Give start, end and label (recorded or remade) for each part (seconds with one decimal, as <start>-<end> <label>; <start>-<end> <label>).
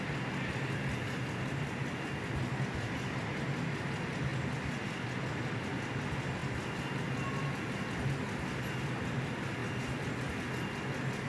0.0-11.3 recorded